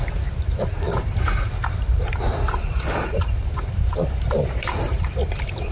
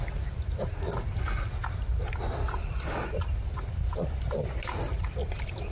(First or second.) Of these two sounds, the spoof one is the first